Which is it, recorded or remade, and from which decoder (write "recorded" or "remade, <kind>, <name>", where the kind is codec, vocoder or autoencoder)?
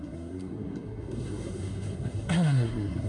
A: remade, codec, SNAC